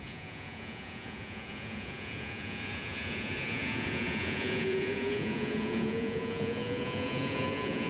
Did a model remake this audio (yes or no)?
yes